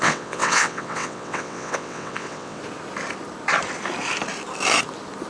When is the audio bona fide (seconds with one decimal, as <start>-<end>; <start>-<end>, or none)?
2.6-5.3